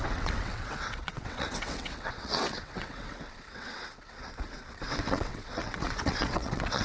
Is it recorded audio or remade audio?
remade